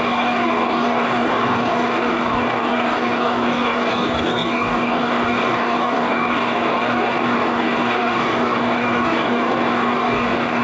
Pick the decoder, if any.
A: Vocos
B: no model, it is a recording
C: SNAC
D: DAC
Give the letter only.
D